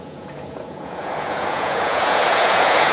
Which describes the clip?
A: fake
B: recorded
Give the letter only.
A